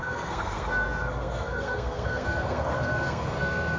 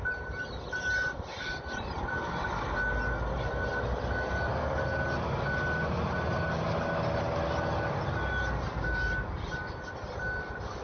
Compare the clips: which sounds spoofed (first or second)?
first